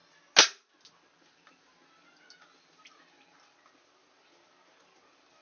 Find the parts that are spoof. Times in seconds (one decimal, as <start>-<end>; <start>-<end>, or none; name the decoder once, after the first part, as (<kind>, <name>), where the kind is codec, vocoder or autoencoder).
none

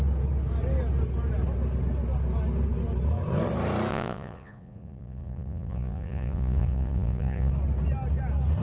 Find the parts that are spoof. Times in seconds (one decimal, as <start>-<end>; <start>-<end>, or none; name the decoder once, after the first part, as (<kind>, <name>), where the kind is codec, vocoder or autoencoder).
3.9-7.5 (vocoder, Vocos)